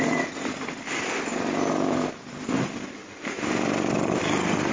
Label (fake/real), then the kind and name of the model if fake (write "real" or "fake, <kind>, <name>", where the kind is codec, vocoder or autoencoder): real